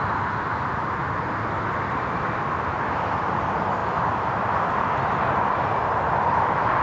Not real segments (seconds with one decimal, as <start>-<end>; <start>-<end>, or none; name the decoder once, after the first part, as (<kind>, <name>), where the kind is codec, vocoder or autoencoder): 0.0-1.0 (vocoder, BigVGAN v2); 1.5-3.8; 4.4-6.8